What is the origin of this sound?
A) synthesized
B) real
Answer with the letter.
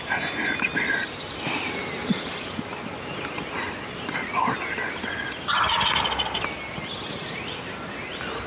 B